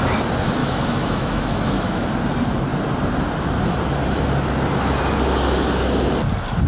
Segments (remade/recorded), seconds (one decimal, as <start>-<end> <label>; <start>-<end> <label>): 0.0-0.6 recorded; 0.6-2.1 remade; 2.1-6.7 recorded